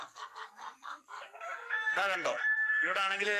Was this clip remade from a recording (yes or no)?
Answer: yes